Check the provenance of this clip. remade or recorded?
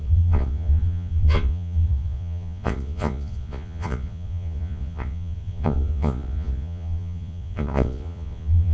remade